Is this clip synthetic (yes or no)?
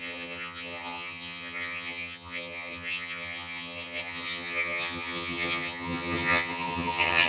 yes